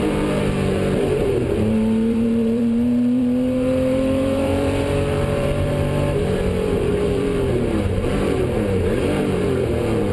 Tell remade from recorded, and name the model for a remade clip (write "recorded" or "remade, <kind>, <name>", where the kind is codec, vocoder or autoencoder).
remade, vocoder, BigVGAN v2